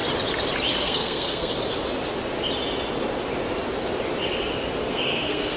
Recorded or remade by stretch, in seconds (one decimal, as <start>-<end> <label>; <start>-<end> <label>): 0.0-0.8 recorded; 0.8-1.5 remade; 1.5-4.9 recorded; 4.9-5.6 remade